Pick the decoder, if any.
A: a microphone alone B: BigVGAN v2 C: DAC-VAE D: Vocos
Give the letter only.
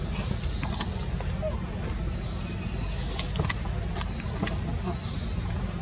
A